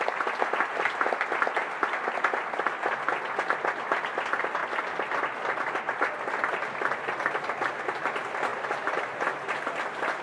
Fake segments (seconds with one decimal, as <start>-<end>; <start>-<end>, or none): none